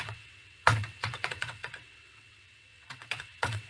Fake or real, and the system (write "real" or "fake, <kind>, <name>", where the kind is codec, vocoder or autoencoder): fake, vocoder, WaveNeXt